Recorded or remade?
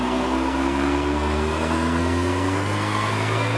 remade